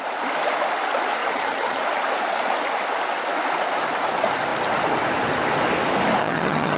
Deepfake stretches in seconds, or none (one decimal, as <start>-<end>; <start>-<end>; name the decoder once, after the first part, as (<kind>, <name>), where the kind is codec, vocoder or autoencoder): 1.2-1.8 (vocoder, HiFi-GAN); 6.2-6.8